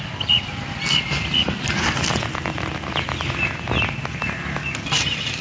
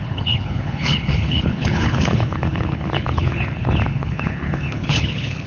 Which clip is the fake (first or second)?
second